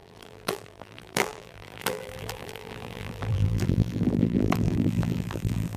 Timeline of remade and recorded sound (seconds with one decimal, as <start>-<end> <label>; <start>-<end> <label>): 0.0-5.8 remade